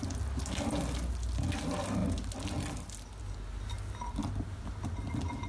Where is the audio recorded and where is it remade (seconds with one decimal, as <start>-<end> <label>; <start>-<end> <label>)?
0.0-4.2 recorded; 4.2-4.8 remade; 4.8-5.5 recorded